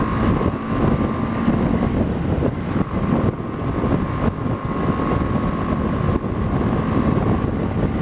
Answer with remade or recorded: recorded